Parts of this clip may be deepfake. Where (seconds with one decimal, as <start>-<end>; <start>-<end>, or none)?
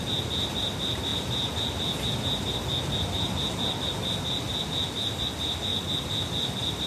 5.7-6.9